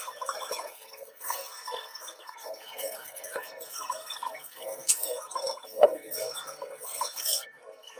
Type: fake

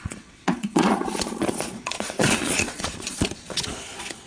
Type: fake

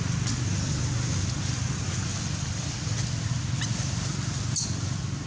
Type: real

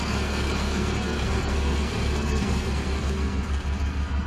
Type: fake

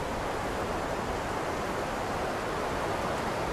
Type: real